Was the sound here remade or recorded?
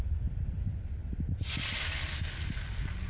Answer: recorded